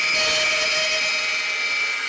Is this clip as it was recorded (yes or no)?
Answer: yes